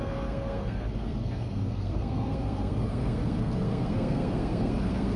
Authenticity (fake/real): fake